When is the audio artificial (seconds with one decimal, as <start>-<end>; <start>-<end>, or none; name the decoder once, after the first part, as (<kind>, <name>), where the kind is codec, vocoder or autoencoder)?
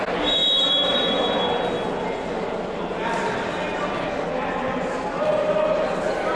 none